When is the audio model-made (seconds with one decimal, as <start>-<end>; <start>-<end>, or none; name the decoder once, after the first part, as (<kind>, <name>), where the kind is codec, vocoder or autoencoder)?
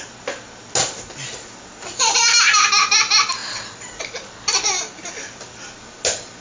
none